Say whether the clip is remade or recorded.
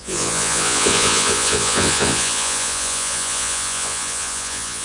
remade